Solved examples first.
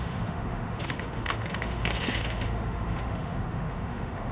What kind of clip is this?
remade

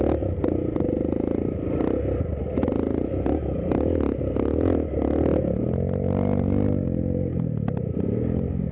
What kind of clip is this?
recorded